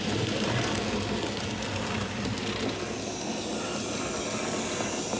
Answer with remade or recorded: recorded